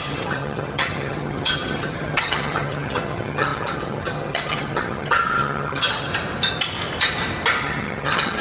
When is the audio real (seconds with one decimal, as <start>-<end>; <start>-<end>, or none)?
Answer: 6.1-7.6

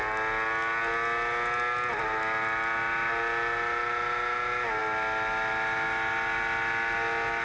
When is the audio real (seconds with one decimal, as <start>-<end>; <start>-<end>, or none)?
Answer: 0.0-7.4

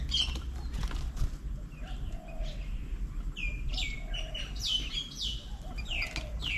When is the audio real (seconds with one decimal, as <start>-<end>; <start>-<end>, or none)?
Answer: 0.0-6.6

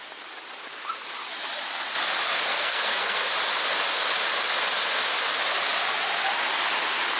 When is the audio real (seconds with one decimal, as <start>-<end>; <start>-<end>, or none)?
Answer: 0.0-2.5; 3.3-7.2

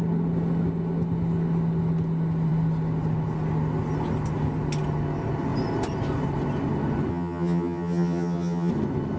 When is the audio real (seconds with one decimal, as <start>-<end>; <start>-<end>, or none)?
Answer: 0.0-7.1; 8.7-9.2

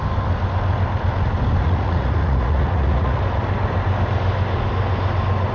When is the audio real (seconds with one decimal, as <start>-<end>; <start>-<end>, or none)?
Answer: 0.0-1.6; 3.2-5.5